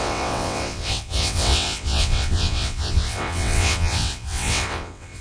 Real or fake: fake